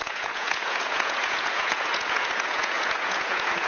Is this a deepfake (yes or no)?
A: yes